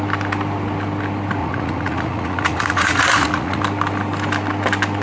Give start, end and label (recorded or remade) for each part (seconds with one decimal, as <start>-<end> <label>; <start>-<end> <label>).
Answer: 0.0-1.4 recorded; 1.4-3.6 remade; 3.6-5.0 recorded